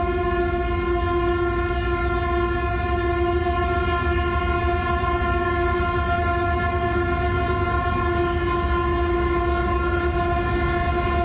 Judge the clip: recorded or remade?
recorded